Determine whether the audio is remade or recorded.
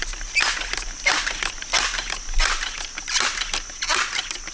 recorded